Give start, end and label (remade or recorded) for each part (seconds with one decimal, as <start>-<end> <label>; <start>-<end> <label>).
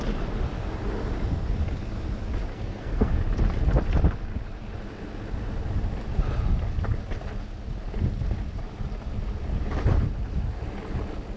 0.0-2.5 recorded; 2.5-3.2 remade; 3.2-11.4 recorded